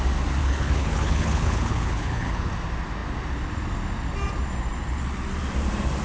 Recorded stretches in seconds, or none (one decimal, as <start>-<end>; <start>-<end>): 0.0-0.4; 2.5-6.0